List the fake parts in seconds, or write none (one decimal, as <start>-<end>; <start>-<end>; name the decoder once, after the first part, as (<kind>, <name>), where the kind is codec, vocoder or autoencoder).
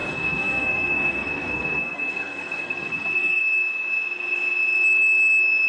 0.0-3.4 (codec, SNAC)